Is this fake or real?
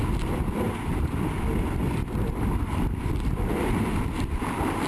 real